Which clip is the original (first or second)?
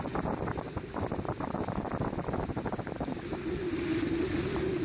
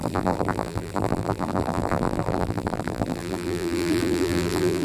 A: first